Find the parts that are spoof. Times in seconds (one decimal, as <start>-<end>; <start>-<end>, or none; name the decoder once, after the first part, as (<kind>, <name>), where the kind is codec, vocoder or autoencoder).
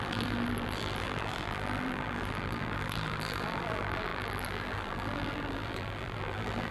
0.0-6.7 (vocoder, BigVGAN v2)